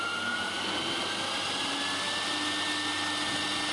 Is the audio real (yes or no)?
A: yes